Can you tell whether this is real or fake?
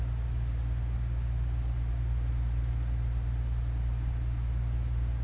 real